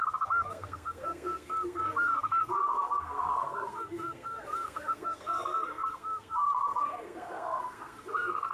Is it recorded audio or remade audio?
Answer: remade